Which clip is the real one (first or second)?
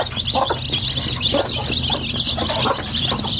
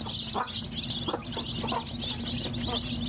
second